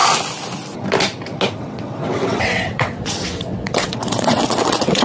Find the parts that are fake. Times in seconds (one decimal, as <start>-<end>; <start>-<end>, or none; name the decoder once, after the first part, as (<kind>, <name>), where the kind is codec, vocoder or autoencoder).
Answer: 1.6-5.0 (vocoder, WaveNeXt)